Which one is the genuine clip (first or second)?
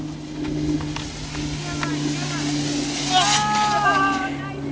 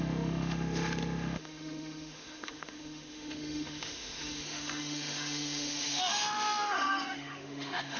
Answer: first